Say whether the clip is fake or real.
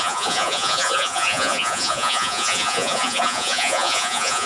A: fake